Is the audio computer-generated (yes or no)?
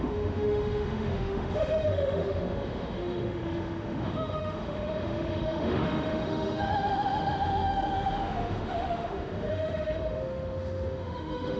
yes